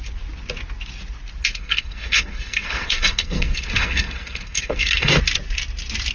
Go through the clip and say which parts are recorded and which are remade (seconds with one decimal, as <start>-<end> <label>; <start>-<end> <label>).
0.0-1.5 recorded; 1.5-5.2 remade; 5.2-6.1 recorded

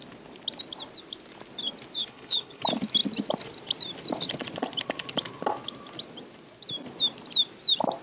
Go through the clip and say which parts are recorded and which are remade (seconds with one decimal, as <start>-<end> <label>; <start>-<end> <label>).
0.0-2.0 recorded; 2.0-2.6 remade; 2.6-8.0 recorded

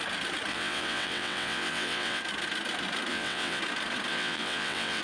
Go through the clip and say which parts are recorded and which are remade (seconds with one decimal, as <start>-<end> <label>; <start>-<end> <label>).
0.0-0.5 recorded; 0.5-2.2 remade; 2.2-3.1 recorded; 3.1-3.6 remade; 3.6-4.1 recorded; 4.1-5.0 remade

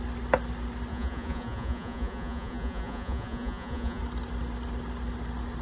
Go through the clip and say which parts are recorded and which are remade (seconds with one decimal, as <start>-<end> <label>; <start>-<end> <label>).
0.0-0.9 recorded; 0.9-4.0 remade; 4.0-5.6 recorded

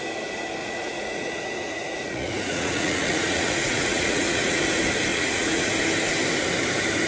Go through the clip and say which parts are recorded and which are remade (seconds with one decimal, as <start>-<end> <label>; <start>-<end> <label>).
0.0-0.6 recorded; 0.6-4.6 remade; 4.6-5.1 recorded; 5.1-5.7 remade; 5.7-7.1 recorded

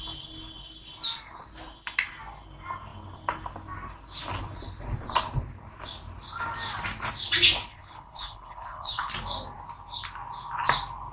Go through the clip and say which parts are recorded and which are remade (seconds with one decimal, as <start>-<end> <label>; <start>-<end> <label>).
0.0-7.7 recorded; 7.7-9.1 remade; 9.1-11.1 recorded

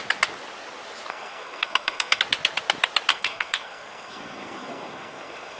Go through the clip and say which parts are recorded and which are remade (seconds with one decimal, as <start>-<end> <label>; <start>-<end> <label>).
0.0-1.1 recorded; 1.1-2.2 remade; 2.2-3.1 recorded; 3.1-5.6 remade

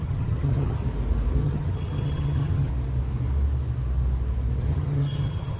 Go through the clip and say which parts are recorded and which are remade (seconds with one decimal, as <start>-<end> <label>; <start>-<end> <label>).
0.0-0.8 remade; 0.8-1.4 recorded; 1.4-2.7 remade; 2.7-4.6 recorded; 4.6-5.6 remade